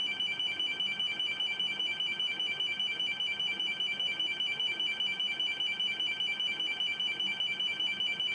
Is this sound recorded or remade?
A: recorded